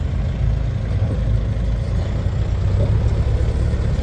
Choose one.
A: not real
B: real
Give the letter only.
B